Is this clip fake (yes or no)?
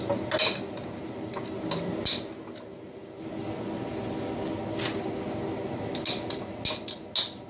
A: no